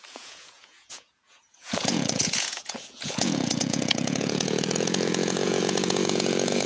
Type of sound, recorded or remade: remade